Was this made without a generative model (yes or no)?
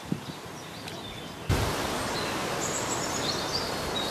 yes